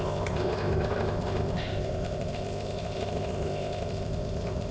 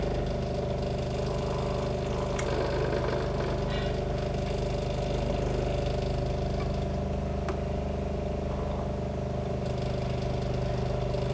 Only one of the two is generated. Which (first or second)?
first